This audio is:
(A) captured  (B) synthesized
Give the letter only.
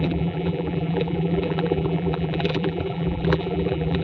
B